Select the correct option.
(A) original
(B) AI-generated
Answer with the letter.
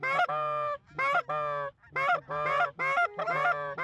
A